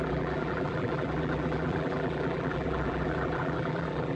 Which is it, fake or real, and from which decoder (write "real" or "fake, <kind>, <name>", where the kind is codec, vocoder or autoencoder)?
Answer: fake, vocoder, BigVGAN v2